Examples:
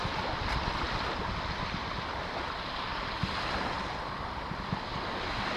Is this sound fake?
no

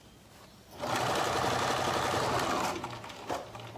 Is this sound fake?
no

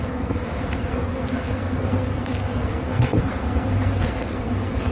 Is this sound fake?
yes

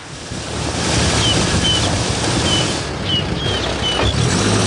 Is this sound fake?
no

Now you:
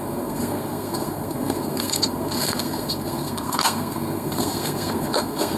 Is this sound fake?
yes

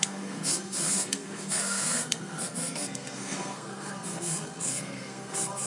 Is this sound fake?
yes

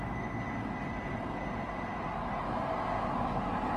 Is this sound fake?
no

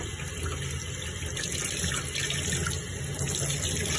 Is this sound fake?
no